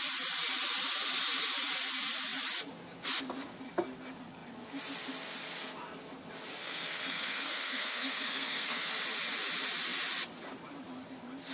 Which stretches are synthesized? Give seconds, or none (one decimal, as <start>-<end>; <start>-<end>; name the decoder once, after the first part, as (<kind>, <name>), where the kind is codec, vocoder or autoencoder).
6.6-8.9 (codec, SNAC)